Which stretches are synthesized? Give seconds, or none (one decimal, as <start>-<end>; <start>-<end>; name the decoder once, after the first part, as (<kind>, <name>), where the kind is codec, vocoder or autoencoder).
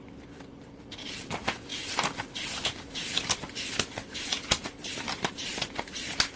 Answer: none